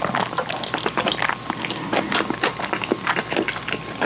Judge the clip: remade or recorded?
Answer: recorded